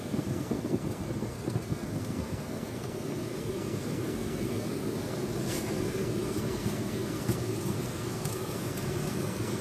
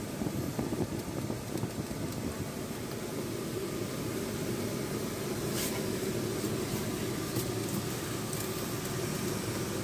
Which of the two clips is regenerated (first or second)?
first